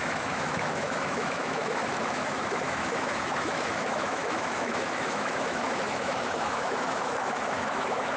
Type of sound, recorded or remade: remade